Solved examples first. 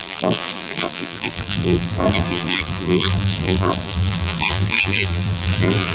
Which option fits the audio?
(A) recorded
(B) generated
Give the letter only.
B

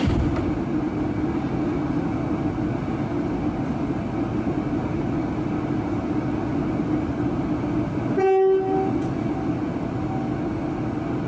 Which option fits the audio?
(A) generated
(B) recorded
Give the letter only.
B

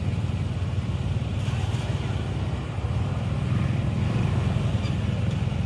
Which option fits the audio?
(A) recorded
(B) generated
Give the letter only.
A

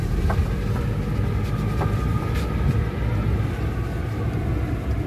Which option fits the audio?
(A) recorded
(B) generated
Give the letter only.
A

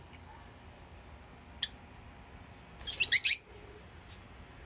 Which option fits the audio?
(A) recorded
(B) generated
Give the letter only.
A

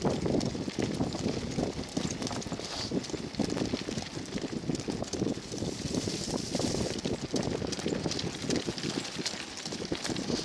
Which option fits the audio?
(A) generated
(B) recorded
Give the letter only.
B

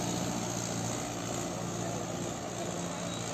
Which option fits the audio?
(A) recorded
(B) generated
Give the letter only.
A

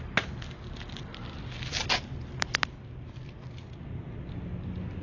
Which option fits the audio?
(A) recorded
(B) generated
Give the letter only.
A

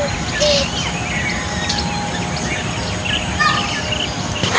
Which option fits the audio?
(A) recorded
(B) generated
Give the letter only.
A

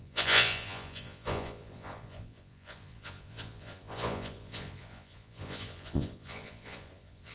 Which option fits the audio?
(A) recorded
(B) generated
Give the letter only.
B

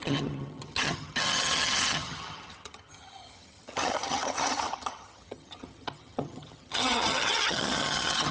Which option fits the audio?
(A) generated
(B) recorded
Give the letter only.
A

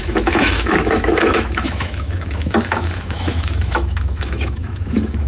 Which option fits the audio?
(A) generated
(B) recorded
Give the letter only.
A